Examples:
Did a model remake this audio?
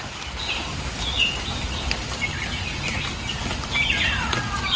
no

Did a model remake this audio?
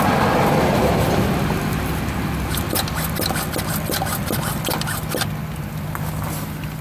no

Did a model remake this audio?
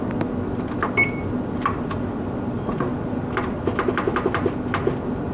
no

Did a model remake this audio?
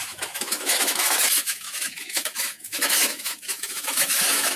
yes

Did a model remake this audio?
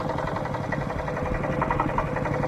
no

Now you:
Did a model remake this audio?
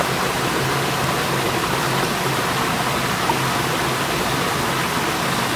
no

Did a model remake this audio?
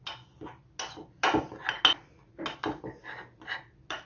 no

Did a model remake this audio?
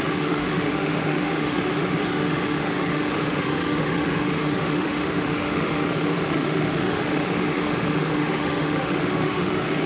yes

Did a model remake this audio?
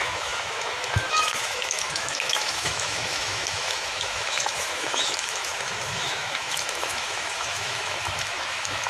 yes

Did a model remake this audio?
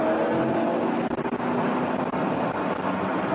no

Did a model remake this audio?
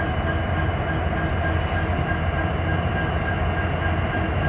no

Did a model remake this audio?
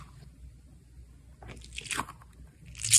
no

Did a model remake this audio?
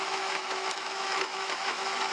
yes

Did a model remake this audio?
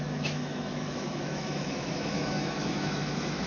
yes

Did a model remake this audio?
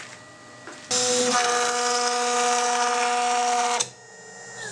no